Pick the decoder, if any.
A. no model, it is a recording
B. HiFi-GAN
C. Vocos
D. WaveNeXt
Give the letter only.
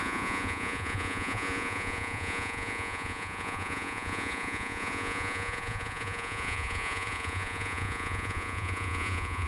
C